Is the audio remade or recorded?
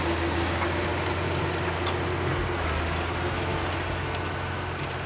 recorded